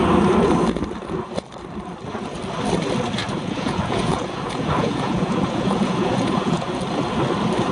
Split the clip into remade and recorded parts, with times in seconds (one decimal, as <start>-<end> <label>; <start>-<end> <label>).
0.0-3.2 recorded; 3.2-6.8 remade; 6.8-7.7 recorded